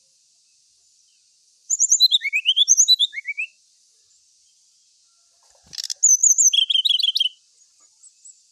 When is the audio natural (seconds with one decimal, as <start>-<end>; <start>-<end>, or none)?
0.0-1.6; 3.5-8.5